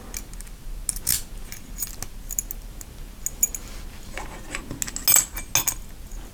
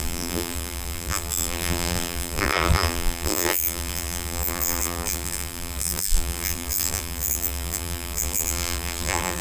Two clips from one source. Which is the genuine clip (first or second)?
first